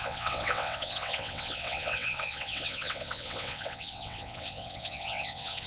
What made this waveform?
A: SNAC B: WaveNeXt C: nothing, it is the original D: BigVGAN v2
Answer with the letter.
B